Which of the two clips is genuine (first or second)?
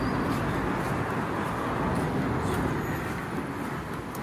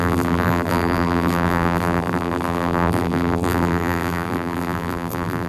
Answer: first